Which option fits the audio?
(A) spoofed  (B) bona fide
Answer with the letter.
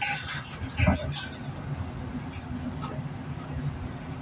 B